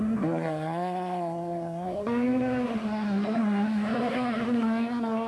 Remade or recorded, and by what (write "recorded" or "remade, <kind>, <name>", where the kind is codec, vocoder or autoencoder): remade, codec, SNAC